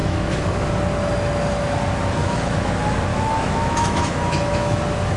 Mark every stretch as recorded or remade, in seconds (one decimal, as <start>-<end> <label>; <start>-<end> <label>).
0.0-0.7 remade; 0.7-2.2 recorded; 2.2-2.7 remade; 2.7-3.1 recorded; 3.1-4.8 remade; 4.8-5.2 recorded

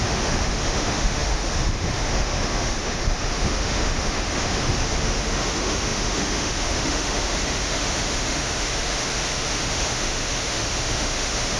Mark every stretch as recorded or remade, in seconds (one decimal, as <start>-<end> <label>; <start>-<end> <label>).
0.0-11.6 remade

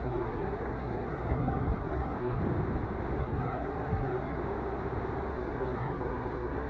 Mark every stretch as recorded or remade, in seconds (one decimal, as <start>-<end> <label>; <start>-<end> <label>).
0.0-2.4 remade; 2.4-3.2 recorded; 3.2-4.4 remade; 4.4-5.3 recorded; 5.3-6.7 remade